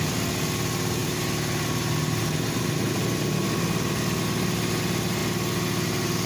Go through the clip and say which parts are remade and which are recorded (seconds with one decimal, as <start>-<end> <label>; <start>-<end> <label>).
0.0-6.3 recorded